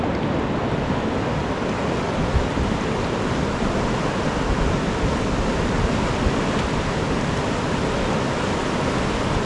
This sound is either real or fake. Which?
real